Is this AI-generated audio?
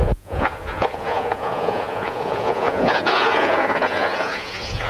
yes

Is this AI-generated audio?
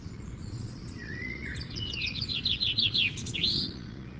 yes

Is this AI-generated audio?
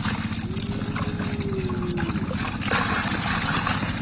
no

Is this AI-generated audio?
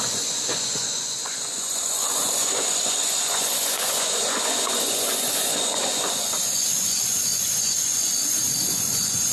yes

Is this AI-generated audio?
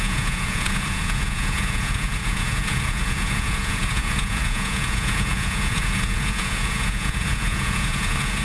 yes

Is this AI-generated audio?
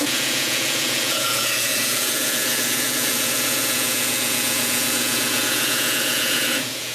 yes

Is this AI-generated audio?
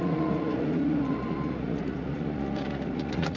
yes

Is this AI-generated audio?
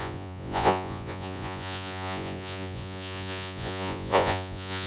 yes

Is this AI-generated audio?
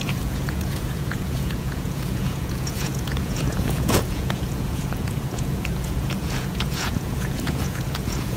yes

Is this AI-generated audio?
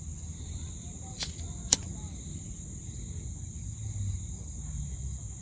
no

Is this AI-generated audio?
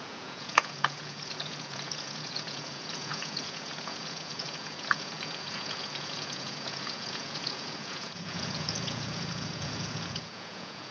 yes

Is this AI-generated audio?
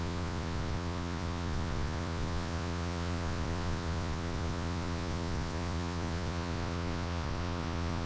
yes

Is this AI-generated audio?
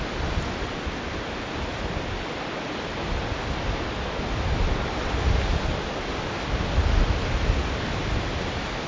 no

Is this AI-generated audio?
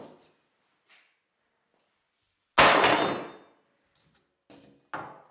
no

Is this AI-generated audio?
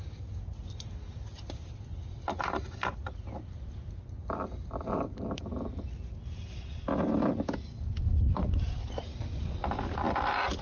no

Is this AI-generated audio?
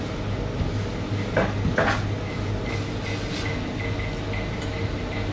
no